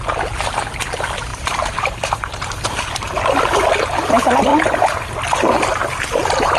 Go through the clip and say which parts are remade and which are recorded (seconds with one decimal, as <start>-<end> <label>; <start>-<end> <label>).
0.0-1.3 recorded; 1.3-2.8 remade; 2.8-6.6 recorded